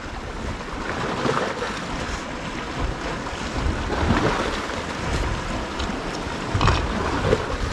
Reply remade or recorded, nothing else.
recorded